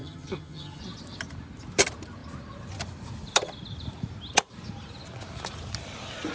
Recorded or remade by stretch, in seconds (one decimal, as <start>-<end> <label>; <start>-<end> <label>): 0.0-0.8 remade; 0.8-6.3 recorded